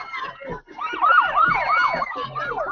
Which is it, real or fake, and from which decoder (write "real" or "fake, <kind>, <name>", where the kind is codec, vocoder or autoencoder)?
real